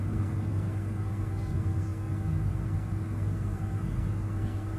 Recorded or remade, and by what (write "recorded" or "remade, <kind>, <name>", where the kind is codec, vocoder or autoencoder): remade, codec, SNAC